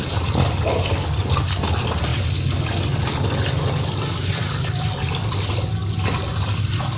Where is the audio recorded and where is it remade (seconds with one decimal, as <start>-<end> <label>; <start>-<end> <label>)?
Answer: 0.0-7.0 recorded